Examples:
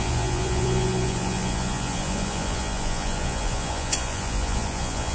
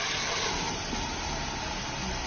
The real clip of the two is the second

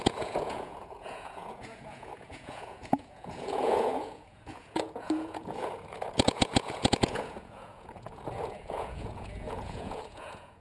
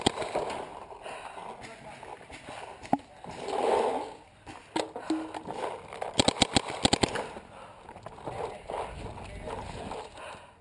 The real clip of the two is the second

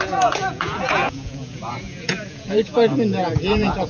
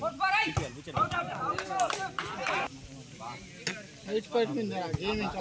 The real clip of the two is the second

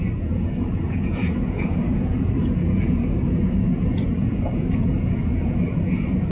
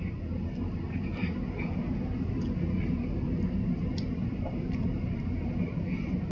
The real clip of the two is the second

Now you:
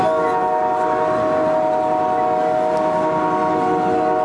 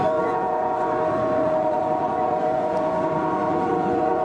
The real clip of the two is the first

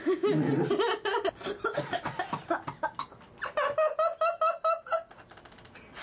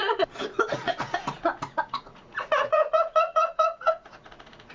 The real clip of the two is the first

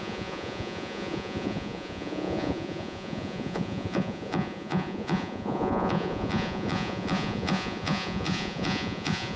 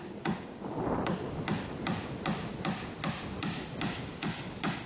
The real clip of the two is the second